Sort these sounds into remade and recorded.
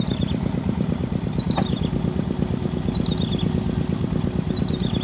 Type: recorded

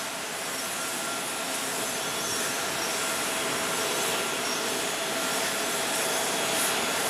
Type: recorded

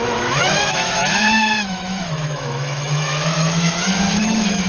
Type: remade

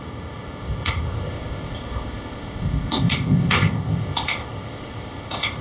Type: remade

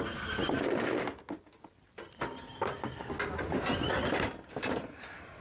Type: recorded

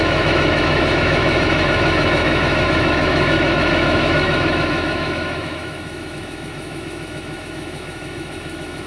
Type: remade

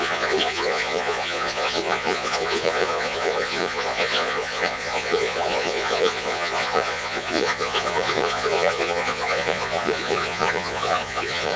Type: remade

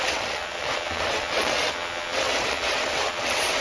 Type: remade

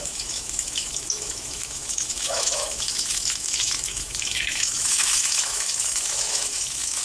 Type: remade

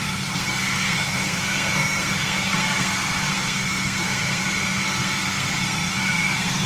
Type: remade